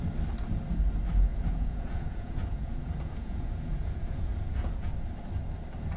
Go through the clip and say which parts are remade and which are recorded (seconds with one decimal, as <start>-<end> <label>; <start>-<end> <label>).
0.0-1.3 recorded; 1.3-4.9 remade; 4.9-6.0 recorded